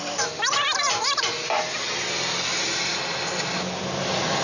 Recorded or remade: recorded